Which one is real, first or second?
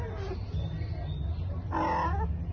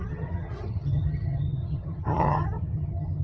first